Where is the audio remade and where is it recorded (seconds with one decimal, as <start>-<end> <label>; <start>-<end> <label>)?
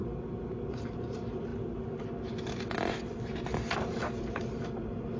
0.0-0.7 recorded; 0.7-1.5 remade; 1.5-4.2 recorded; 4.2-5.2 remade